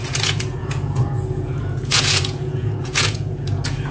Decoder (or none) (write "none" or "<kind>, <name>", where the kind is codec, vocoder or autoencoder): vocoder, Vocos